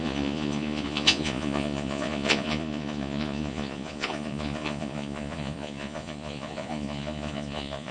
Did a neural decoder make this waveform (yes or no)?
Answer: yes